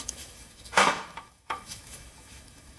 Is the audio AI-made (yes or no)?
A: yes